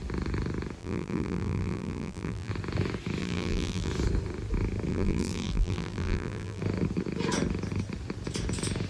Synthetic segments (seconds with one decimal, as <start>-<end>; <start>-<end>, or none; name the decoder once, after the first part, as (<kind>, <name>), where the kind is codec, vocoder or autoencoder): 0.8-2.5 (vocoder, BigVGAN v2); 3.2-3.9; 4.9-6.6